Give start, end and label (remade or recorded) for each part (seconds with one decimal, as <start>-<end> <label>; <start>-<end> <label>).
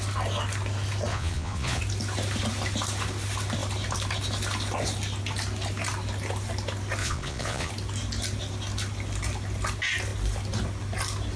0.0-1.1 recorded; 1.1-1.8 remade; 1.8-7.0 recorded; 7.0-7.7 remade; 7.7-11.4 recorded